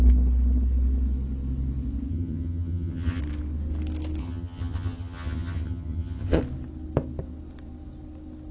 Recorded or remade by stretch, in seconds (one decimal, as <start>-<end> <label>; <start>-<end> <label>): 0.0-2.1 recorded; 2.1-3.2 remade; 3.2-4.2 recorded; 4.2-6.4 remade; 6.4-8.5 recorded

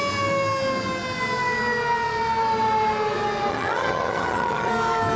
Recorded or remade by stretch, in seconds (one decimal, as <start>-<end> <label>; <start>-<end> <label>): 0.0-3.5 recorded; 3.5-4.7 remade; 4.7-5.2 recorded

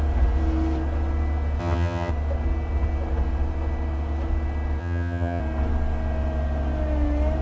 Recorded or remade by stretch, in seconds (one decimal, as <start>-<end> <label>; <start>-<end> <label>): 0.0-1.6 recorded; 1.6-2.1 remade; 2.1-4.8 recorded; 4.8-5.4 remade; 5.4-7.4 recorded

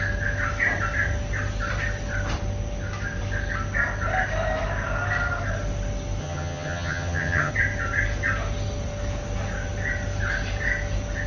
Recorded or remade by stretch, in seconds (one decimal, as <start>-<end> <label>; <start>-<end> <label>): 0.0-6.2 recorded; 6.2-7.5 remade; 7.5-11.3 recorded